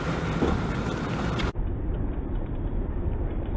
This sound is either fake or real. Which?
fake